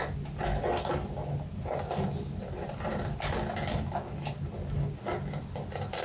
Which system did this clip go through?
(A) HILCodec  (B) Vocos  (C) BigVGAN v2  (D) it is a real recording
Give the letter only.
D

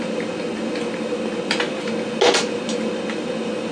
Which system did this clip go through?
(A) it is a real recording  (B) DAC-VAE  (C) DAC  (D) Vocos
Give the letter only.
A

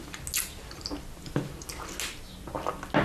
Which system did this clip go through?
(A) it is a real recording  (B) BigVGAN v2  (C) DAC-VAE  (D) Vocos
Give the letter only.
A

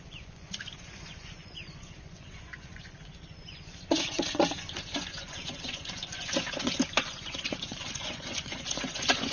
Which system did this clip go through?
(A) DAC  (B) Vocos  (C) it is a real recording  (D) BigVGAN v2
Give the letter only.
B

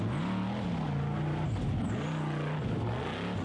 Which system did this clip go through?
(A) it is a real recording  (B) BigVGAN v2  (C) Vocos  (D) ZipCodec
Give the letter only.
A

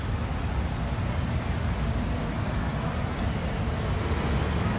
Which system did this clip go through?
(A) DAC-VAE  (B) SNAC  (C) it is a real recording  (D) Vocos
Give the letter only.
C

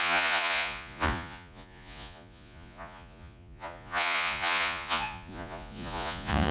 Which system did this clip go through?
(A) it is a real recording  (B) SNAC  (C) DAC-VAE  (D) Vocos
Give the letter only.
D